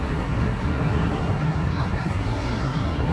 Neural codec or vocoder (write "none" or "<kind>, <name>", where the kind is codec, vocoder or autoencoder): codec, SNAC